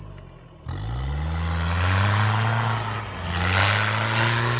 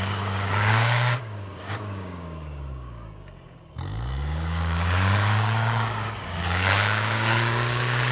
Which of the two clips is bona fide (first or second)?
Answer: first